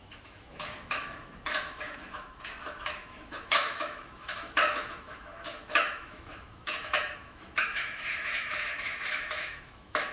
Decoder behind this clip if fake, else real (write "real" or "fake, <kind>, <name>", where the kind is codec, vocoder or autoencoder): fake, autoencoder, DAC-VAE